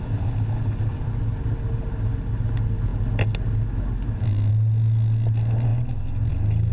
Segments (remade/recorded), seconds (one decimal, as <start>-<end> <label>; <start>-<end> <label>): 0.0-6.7 recorded